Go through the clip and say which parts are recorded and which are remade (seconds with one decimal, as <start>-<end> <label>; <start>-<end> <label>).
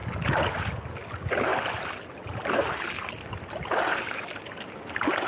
0.0-5.3 recorded